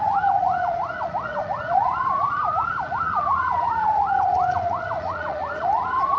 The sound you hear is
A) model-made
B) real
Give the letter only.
A